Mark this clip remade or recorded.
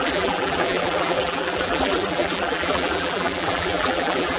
remade